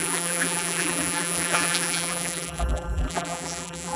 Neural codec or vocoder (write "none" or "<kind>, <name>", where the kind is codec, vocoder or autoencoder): vocoder, BigVGAN v2